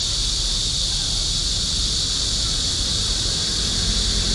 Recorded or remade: recorded